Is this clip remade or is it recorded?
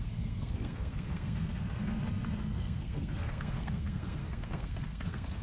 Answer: remade